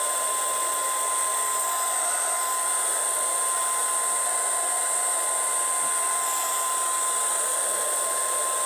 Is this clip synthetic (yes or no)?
no